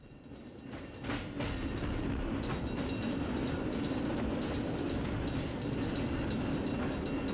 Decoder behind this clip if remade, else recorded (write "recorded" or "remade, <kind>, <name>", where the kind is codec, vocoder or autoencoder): recorded